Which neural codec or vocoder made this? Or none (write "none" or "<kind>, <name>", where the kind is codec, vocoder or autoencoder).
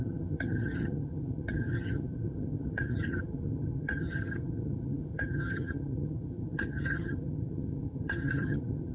vocoder, HiFi-GAN